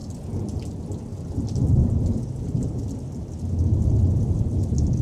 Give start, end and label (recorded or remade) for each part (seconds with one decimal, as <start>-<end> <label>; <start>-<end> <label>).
0.0-5.0 recorded